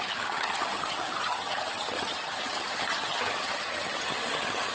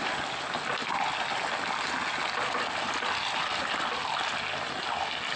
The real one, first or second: second